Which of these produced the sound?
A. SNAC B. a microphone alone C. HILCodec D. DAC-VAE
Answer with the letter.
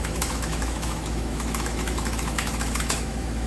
D